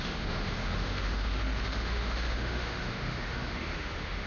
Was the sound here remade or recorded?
remade